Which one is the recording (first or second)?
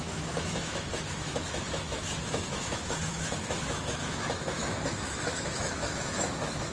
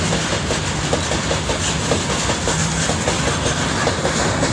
second